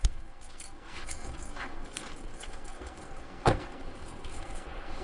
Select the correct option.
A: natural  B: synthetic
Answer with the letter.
B